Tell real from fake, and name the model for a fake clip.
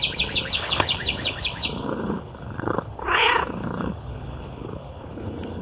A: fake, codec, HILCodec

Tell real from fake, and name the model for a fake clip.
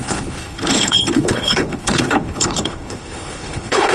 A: fake, codec, HILCodec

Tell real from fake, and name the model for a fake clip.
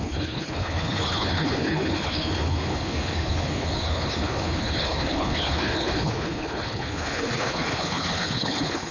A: fake, codec, HILCodec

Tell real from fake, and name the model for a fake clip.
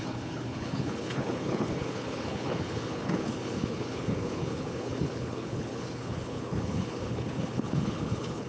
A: fake, codec, HILCodec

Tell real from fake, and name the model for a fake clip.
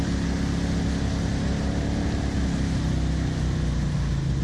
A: real